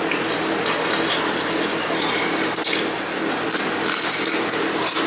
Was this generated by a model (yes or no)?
no